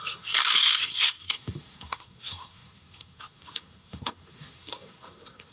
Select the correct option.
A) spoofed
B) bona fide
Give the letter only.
A